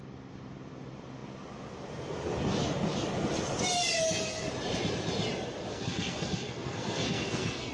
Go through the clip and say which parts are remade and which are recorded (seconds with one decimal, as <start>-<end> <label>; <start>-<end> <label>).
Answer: 0.0-5.7 recorded; 5.7-7.7 remade